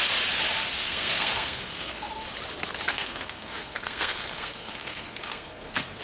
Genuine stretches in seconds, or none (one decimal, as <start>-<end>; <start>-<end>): 0.0-0.8; 2.1-2.9